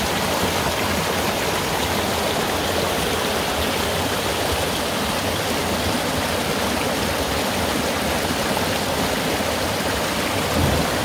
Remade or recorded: recorded